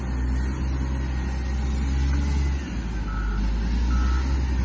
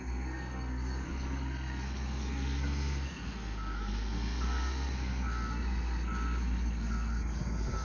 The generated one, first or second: second